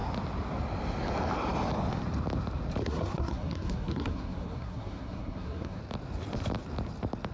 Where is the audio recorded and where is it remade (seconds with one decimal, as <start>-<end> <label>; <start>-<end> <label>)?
0.0-2.8 recorded; 2.8-5.8 remade; 5.8-7.3 recorded